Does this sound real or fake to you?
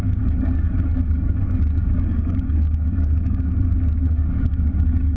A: fake